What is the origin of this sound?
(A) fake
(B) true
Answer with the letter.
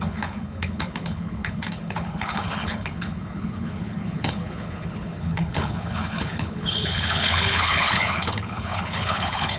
A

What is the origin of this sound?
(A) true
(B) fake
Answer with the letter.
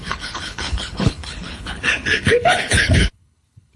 B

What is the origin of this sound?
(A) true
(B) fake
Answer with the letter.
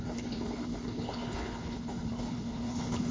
B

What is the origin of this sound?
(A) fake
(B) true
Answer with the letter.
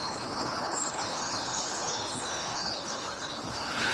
A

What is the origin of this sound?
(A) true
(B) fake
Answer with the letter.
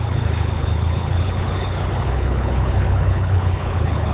B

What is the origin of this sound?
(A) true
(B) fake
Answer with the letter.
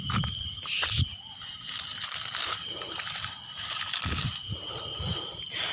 A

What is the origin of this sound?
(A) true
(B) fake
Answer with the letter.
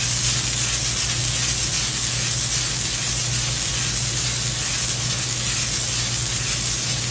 A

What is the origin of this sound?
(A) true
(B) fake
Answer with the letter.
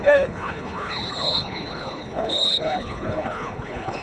B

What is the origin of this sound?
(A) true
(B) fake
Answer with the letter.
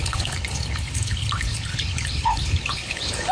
B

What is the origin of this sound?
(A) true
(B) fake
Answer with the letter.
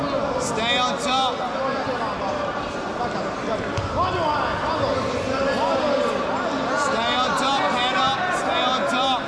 A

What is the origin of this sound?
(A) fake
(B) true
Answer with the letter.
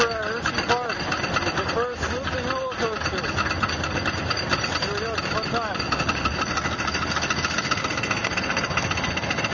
B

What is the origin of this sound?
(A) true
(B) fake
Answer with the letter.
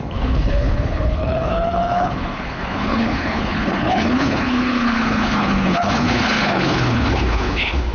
B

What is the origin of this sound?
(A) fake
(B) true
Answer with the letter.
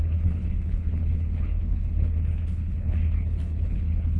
A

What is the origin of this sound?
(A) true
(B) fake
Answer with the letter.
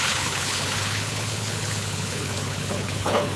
B